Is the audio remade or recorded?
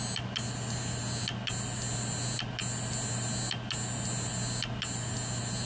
recorded